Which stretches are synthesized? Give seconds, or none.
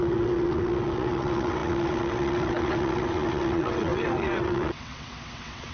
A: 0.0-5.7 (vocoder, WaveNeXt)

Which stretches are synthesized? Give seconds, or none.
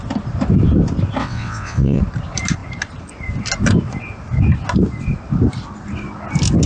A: 1.2-2.0 (vocoder, WaveNeXt)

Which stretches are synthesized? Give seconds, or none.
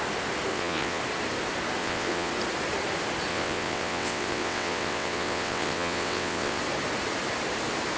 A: 0.5-1.0 (vocoder, WaveNeXt); 1.8-2.3; 3.3-6.6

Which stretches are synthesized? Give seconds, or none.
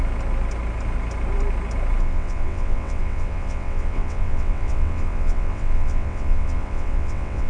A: 2.0-7.5 (vocoder, WaveNeXt)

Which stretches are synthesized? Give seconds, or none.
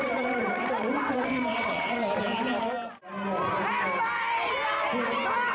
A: 0.0-2.0 (vocoder, WaveNeXt)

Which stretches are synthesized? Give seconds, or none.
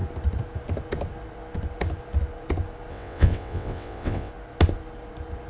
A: 2.9-4.3 (vocoder, WaveNeXt)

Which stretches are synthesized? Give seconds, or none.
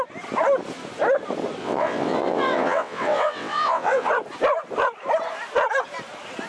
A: 1.6-4.1 (vocoder, WaveNeXt)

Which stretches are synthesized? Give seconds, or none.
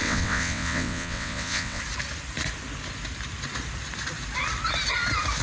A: 0.0-1.8 (vocoder, WaveNeXt)